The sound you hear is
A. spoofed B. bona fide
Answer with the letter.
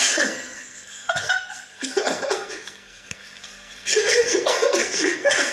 A